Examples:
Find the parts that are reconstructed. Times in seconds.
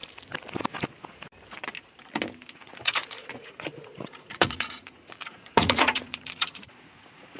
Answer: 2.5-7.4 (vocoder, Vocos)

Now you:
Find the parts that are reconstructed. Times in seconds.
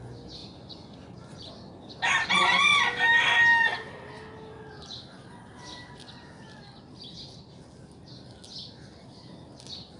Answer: 0.4-1.5 (vocoder, Vocos)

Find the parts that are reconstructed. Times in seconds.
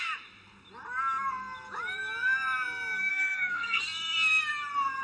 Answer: 3.1-3.8 (codec, SNAC)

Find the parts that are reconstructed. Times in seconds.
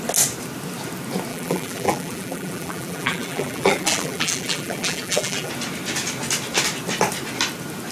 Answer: 1.3-5.5 (vocoder, BigVGAN v2)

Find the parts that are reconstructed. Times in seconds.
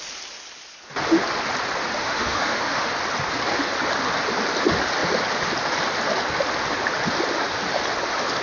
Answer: 2.0-2.9 (autoencoder, DAC-VAE)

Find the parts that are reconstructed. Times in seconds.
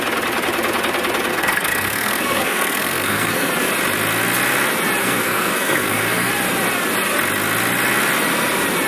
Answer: 1.3-3.5 (codec, SNAC); 5.0-6.3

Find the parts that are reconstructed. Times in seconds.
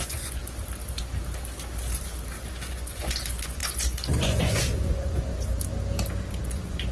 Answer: 0.0-0.4 (vocoder, Vocos); 2.5-5.3; 6.4-6.9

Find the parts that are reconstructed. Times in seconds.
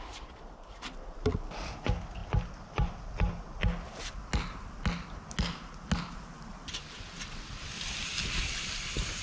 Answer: none